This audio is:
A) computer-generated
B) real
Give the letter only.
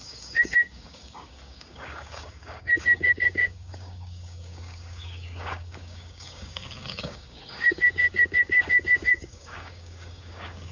A